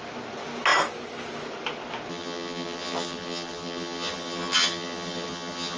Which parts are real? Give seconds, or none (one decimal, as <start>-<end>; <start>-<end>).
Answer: 0.0-2.1

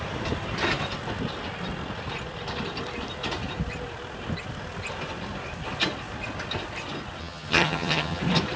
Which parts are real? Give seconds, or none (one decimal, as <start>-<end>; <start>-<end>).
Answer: 0.0-7.2; 8.2-8.6

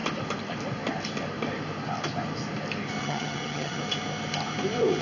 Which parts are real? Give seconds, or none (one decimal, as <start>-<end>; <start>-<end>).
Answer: 0.0-3.0; 3.8-5.0

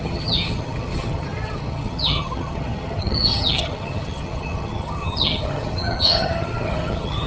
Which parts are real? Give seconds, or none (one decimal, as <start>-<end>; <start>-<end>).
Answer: none

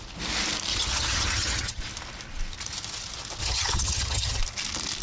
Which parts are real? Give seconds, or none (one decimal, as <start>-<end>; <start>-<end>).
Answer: 0.0-0.7; 1.8-3.4; 4.4-5.0

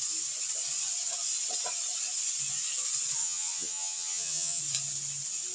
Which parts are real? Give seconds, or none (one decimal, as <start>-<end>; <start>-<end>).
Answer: 0.0-3.2; 4.6-5.5